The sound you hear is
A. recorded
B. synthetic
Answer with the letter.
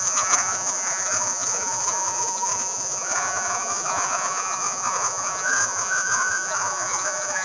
B